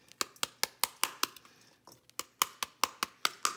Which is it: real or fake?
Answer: real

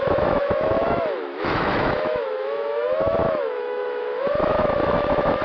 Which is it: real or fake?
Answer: fake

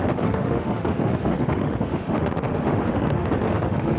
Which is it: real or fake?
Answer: fake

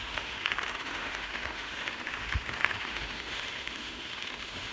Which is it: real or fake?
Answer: fake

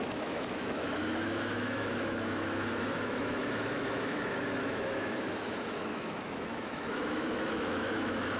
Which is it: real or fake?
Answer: fake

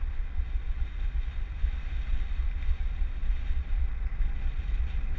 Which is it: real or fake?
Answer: real